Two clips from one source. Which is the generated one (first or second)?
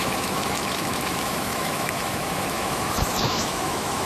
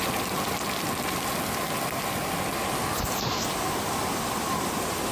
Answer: first